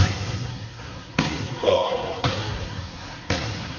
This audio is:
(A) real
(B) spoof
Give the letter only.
B